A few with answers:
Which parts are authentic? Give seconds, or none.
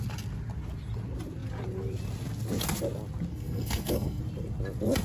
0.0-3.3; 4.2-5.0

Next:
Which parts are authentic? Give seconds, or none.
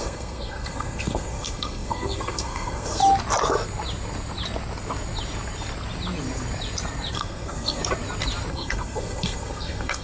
3.0-7.1; 7.8-8.5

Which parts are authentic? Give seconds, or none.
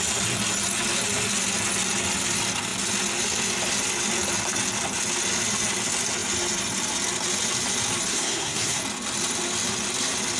0.0-8.1; 8.8-10.4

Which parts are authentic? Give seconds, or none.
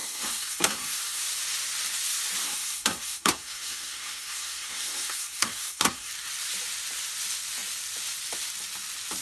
1.2-2.4; 6.1-9.2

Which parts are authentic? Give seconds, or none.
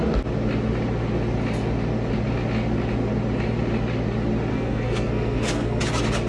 0.0-4.5; 5.8-6.3